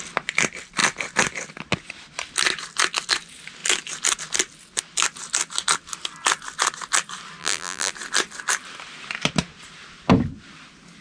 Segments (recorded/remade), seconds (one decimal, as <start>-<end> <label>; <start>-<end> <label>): 0.0-7.4 recorded; 7.4-7.9 remade; 7.9-11.0 recorded